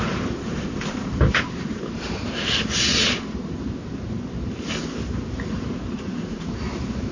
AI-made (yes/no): yes